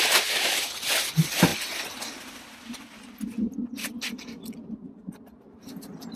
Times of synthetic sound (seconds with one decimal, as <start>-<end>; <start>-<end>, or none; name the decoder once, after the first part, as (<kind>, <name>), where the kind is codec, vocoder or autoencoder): none